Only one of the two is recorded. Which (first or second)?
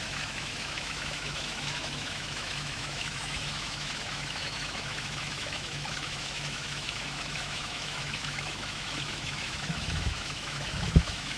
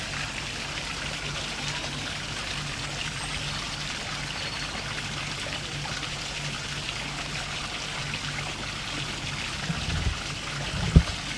second